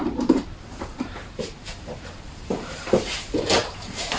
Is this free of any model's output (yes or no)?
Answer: no